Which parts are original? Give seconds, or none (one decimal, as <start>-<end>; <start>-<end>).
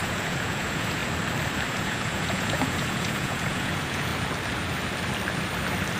1.0-1.7; 4.1-6.0